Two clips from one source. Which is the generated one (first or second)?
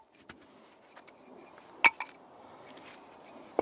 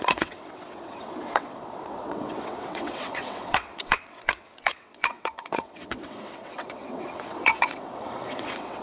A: second